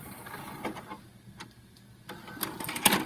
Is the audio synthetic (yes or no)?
no